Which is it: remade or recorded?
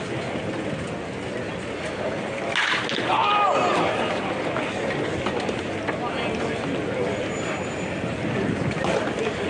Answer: recorded